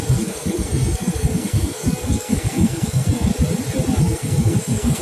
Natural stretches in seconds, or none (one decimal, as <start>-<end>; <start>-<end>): 3.3-4.0